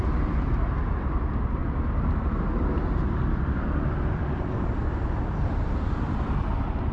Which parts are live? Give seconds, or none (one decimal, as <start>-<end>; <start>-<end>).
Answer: none